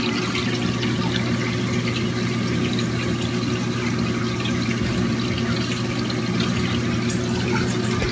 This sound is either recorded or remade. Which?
recorded